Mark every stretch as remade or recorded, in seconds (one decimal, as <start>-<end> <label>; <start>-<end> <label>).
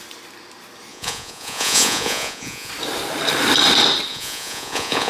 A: 0.0-0.9 recorded; 0.9-2.7 remade; 2.7-4.1 recorded; 4.1-5.1 remade